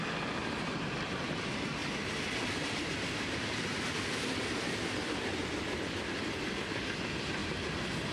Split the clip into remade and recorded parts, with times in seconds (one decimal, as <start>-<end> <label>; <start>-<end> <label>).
0.0-8.1 recorded